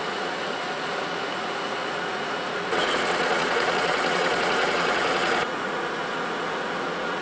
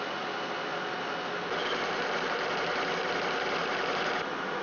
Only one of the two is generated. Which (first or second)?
first